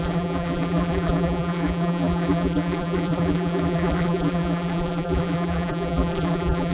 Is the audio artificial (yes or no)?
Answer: yes